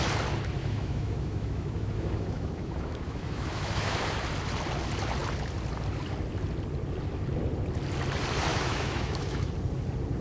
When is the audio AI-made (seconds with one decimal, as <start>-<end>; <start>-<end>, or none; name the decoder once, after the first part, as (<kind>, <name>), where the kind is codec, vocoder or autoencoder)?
0.6-4.0 (autoencoder, DAC-VAE); 8.5-9.5